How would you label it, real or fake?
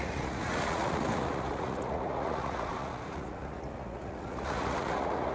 fake